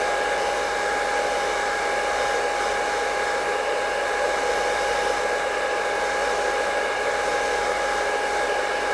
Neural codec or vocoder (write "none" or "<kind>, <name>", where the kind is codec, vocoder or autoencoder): none